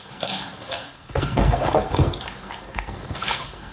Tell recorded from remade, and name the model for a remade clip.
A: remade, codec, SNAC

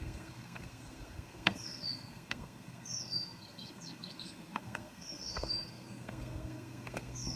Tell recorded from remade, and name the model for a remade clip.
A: remade, codec, SNAC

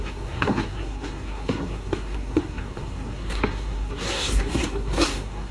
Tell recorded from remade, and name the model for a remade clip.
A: remade, codec, SNAC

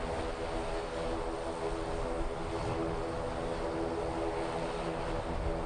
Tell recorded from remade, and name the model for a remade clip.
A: recorded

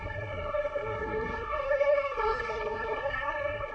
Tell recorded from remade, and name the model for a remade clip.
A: remade, codec, SNAC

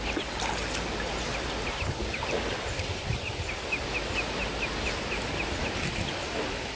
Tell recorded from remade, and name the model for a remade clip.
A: recorded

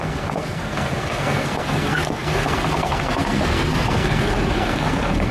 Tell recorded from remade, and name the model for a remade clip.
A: remade, codec, SNAC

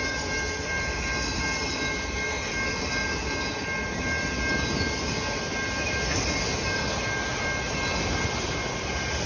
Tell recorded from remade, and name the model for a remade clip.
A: recorded